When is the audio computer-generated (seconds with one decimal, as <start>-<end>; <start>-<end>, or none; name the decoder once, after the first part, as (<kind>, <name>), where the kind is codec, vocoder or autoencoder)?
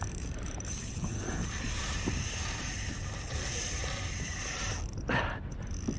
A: 0.0-3.6 (vocoder, BigVGAN v2)